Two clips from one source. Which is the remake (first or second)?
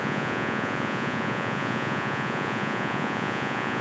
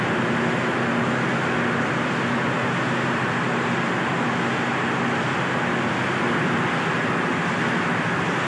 first